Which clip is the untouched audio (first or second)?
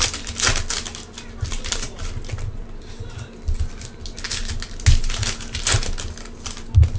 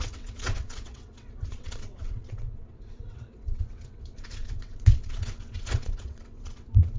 first